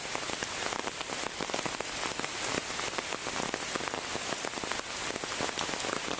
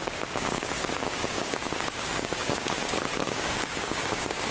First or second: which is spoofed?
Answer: second